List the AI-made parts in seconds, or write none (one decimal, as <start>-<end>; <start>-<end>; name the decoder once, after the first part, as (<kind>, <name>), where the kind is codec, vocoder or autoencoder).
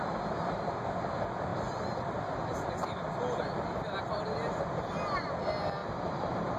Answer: none